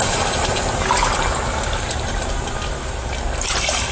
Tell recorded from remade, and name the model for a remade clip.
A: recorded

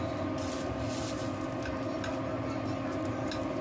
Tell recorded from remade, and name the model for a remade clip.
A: recorded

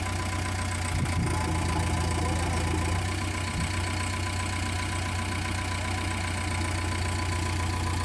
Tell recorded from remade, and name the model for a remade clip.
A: recorded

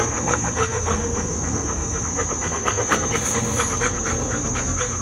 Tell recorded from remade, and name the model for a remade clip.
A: remade, codec, SNAC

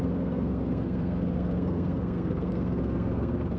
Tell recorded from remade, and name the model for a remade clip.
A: remade, codec, SNAC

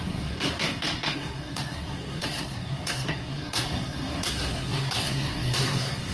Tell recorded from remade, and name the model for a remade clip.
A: remade, codec, SNAC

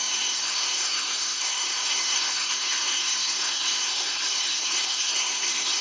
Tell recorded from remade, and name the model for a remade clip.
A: remade, codec, SNAC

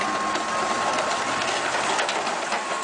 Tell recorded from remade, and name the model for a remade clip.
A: recorded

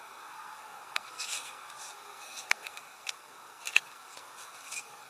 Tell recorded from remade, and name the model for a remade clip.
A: remade, codec, SNAC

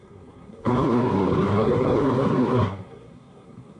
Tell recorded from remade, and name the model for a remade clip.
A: remade, codec, SNAC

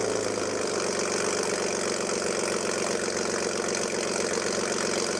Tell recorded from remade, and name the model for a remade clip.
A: recorded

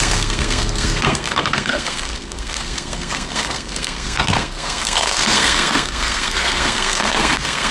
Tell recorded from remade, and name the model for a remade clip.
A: remade, codec, SNAC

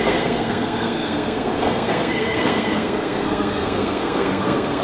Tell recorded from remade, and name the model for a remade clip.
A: remade, codec, SNAC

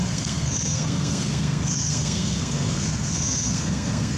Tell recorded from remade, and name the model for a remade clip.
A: remade, codec, SNAC